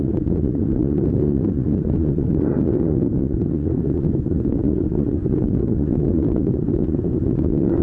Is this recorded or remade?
remade